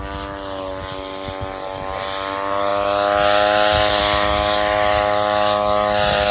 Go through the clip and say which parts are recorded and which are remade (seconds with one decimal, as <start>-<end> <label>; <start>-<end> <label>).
0.0-6.3 recorded